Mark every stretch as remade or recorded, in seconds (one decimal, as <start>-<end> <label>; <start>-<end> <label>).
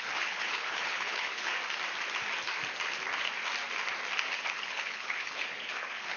0.0-1.6 remade; 1.6-4.5 recorded; 4.5-6.2 remade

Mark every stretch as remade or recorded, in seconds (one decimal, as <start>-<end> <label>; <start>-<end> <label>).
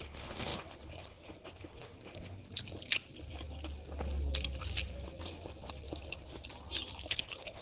0.0-2.5 remade; 2.5-7.1 recorded; 7.1-7.6 remade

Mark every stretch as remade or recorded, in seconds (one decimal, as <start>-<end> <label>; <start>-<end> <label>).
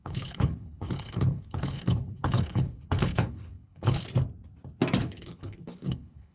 0.0-4.1 remade; 4.1-5.0 recorded; 5.0-6.3 remade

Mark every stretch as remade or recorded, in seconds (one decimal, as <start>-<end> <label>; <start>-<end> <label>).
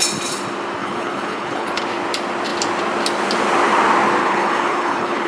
0.0-0.8 recorded; 0.8-1.8 remade; 1.8-4.2 recorded; 4.2-5.3 remade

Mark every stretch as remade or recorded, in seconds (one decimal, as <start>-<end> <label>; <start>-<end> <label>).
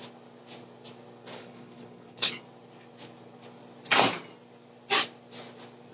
0.0-1.4 recorded; 1.4-2.4 remade; 2.4-5.9 recorded